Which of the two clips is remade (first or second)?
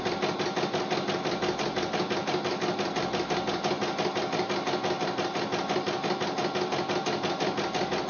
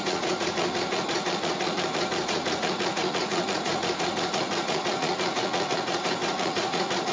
second